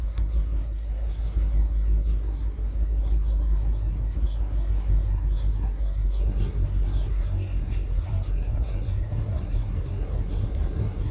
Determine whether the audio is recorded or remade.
remade